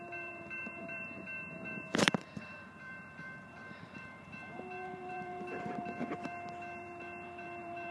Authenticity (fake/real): fake